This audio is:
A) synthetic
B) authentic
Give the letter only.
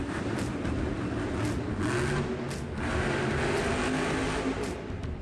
B